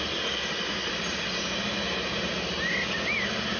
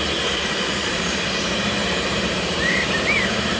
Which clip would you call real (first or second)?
first